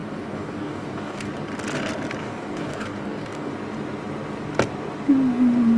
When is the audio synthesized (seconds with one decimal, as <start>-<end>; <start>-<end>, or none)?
0.0-1.3; 2.2-3.5